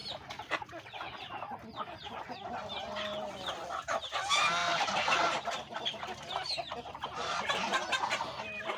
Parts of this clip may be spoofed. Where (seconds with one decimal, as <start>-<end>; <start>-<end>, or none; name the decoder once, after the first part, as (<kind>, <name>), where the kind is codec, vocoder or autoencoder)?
4.6-8.4 (vocoder, BigVGAN v2)